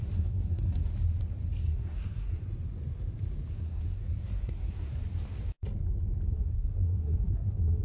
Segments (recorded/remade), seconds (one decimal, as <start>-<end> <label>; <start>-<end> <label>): 0.0-0.9 remade; 0.9-1.6 recorded; 1.6-2.4 remade; 2.4-3.5 recorded; 3.5-5.0 remade; 5.0-6.3 recorded; 6.3-7.8 remade